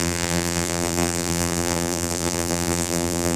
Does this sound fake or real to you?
fake